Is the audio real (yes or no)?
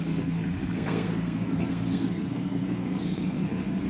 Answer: no